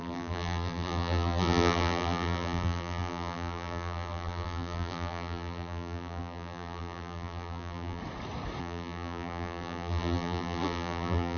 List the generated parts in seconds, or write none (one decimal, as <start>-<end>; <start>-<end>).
0.0-8.0; 8.6-11.4